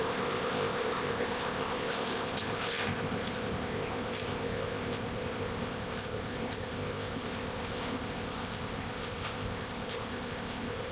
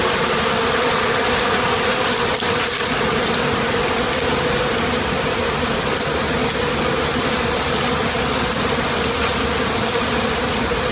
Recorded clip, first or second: second